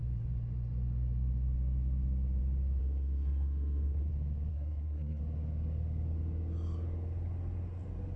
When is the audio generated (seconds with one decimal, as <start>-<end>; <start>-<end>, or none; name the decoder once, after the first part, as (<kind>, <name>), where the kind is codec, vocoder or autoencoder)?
2.8-4.1 (codec, SNAC); 4.5-5.2

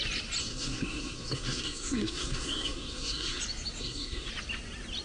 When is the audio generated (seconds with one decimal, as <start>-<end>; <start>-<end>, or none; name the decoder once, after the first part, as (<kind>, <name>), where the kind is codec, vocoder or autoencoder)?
0.4-3.4 (codec, SNAC); 3.8-4.3

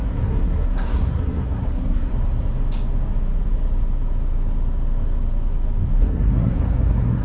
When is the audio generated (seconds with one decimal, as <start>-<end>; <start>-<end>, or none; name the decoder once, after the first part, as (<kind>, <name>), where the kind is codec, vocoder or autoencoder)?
0.0-2.1 (codec, SNAC); 6.0-7.2

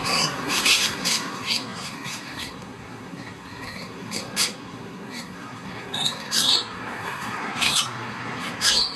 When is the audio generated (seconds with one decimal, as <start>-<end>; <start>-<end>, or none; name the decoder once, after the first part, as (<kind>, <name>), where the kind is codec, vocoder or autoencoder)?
0.0-9.0 (codec, SNAC)

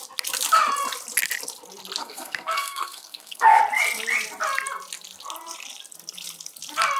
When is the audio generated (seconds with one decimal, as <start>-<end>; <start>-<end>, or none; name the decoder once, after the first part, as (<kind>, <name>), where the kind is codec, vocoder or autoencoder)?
2.0-3.6 (codec, SNAC)

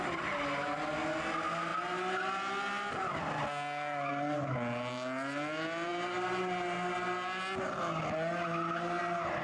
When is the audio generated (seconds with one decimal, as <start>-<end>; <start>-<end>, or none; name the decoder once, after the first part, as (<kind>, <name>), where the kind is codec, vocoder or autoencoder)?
none

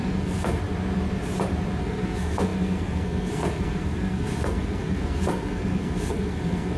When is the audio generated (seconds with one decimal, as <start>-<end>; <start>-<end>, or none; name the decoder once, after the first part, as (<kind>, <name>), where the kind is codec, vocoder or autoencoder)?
0.0-0.6 (codec, SNAC); 1.8-6.8

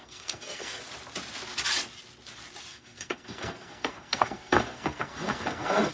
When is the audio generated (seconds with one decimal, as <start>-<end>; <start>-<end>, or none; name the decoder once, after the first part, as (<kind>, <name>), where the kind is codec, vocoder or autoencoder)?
0.0-0.8 (codec, SNAC); 2.7-5.9